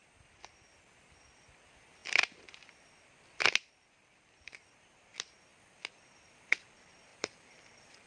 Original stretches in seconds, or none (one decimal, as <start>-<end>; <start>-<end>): 0.0-7.1